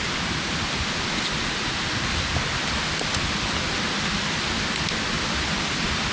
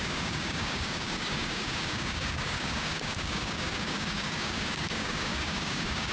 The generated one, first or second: second